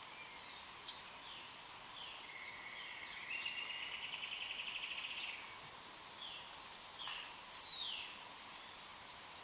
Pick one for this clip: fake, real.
real